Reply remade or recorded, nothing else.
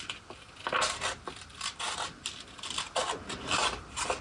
recorded